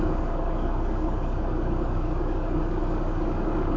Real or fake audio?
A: fake